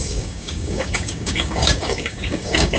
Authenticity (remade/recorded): remade